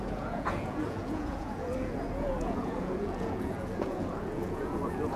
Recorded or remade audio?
remade